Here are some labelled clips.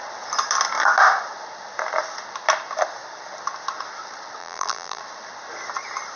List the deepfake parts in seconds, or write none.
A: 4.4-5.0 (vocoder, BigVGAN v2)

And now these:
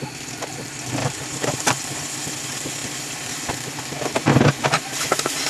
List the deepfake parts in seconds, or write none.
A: 1.0-1.8 (vocoder, BigVGAN v2)

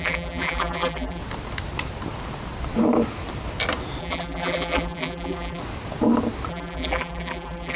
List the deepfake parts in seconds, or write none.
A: 0.0-1.2 (vocoder, BigVGAN v2); 4.0-5.6; 6.5-7.8

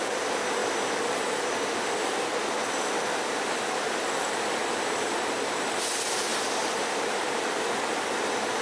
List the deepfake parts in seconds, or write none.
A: 0.0-0.6 (vocoder, BigVGAN v2); 2.8-8.6